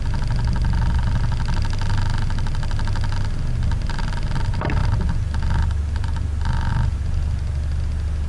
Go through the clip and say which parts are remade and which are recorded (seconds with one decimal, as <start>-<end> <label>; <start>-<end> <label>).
0.0-8.3 recorded